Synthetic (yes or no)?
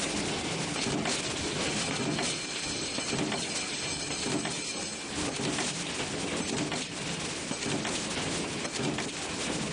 no